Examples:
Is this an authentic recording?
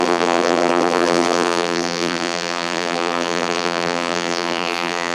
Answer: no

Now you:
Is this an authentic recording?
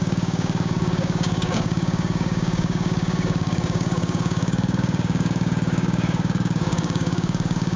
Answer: no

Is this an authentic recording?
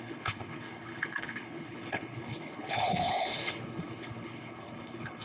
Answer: no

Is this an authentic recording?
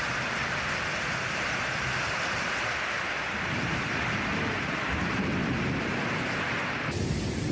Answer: no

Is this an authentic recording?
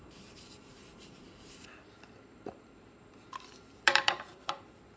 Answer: no